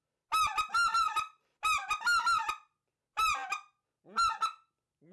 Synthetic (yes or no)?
no